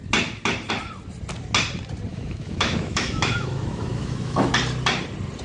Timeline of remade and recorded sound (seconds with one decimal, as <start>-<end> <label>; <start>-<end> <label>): 0.0-2.1 recorded; 2.1-4.5 remade; 4.5-5.4 recorded